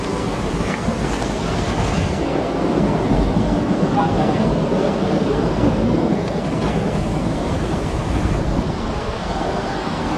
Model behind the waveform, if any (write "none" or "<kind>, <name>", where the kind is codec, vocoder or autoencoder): codec, SNAC